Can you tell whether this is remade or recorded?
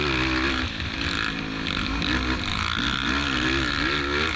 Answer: recorded